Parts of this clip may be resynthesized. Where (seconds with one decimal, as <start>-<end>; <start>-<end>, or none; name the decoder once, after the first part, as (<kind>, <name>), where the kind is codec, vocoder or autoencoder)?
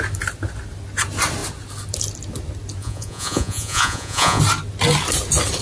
2.8-4.4 (vocoder, Vocos)